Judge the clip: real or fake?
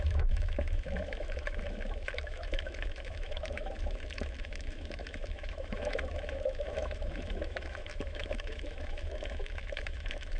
fake